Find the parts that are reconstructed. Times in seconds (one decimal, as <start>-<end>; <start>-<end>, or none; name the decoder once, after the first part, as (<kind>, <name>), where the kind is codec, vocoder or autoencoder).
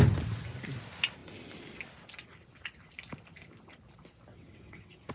4.3-5.1 (vocoder, WaveNeXt)